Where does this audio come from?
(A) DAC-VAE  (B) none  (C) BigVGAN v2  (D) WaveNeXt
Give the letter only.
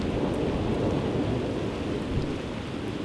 B